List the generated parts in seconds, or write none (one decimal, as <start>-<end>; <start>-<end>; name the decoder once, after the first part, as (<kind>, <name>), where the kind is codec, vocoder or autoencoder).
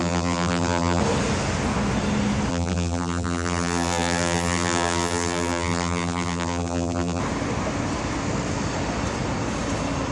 0.0-1.0 (vocoder, BigVGAN v2); 2.5-7.2